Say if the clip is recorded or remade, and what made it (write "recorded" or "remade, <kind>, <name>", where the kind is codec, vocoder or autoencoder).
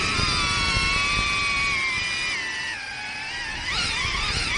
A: recorded